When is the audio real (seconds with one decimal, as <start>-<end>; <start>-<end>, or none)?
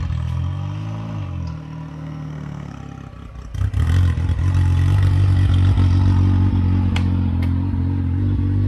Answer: 0.0-1.9; 2.8-8.7